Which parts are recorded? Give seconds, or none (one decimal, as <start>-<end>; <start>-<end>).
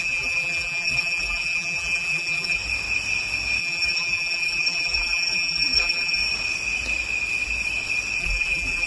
2.6-3.6; 6.2-8.2